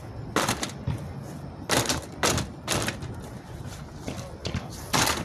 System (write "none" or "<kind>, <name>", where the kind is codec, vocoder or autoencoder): none